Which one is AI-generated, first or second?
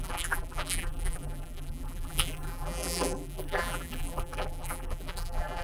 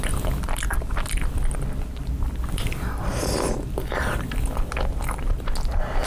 first